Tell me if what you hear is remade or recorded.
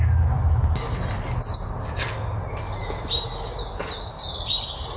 recorded